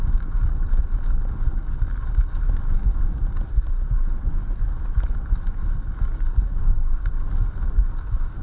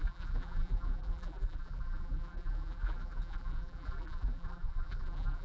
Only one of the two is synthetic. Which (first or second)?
second